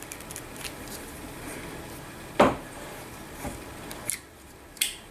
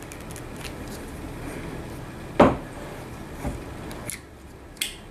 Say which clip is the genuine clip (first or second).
second